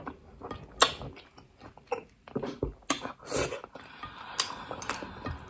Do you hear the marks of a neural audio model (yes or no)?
no